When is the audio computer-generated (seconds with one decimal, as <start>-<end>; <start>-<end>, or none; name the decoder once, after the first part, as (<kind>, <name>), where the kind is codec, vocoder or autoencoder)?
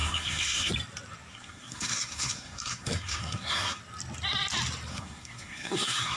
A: 0.0-0.7 (codec, SNAC); 1.3-3.8; 4.9-6.2